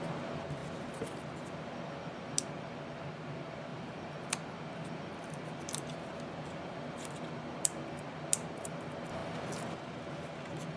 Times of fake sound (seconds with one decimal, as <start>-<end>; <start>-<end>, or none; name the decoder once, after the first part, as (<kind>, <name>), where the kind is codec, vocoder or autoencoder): 3.7-4.3 (vocoder, BigVGAN v2)